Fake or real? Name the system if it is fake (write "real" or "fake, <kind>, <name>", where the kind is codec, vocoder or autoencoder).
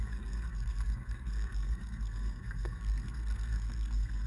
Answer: fake, codec, SNAC